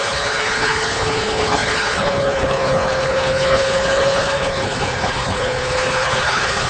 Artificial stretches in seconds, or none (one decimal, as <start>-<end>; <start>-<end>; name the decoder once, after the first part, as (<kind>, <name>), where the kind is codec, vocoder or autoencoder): 0.0-6.7 (codec, HILCodec)